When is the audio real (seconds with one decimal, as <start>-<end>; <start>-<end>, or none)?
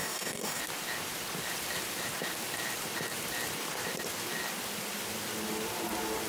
0.6-6.3